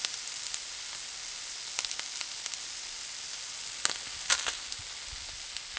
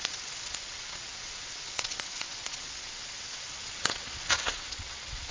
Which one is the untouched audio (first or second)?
first